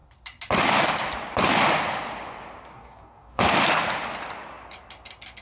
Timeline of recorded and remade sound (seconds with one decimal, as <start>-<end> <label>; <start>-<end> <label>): 0.0-2.7 recorded; 2.7-3.6 remade; 3.6-5.4 recorded